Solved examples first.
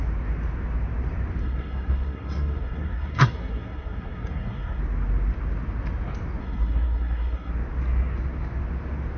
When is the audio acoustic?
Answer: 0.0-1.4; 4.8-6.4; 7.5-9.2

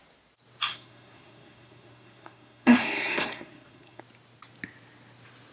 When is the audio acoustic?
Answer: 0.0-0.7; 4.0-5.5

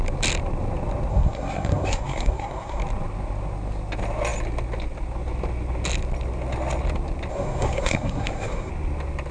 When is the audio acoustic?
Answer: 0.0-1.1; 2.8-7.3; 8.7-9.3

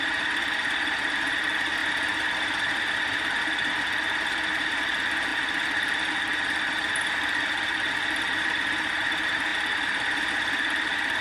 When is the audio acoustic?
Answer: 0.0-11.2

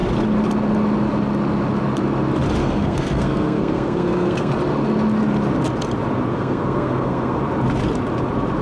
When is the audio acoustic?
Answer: 0.0-2.6; 4.5-6.3; 7.4-8.6

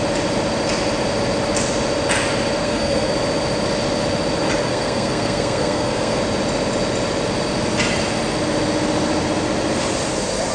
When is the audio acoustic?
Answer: 0.0-2.6; 3.1-4.6; 6.2-10.5

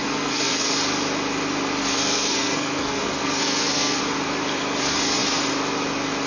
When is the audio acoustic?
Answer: 0.7-1.8; 4.0-6.3